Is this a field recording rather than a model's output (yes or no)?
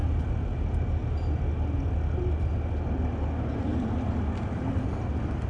yes